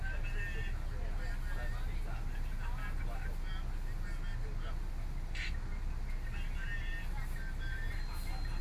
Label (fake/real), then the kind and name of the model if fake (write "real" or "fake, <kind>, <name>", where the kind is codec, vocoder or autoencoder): real